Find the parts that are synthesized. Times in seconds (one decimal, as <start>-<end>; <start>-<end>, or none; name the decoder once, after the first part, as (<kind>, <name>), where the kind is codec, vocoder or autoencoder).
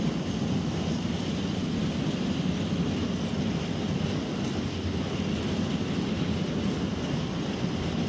none